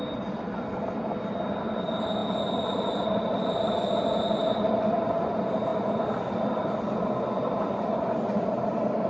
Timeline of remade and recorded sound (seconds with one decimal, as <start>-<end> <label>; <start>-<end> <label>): 0.0-9.1 recorded